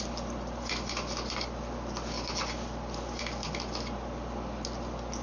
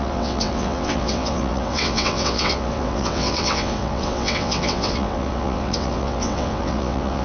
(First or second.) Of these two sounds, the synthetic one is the second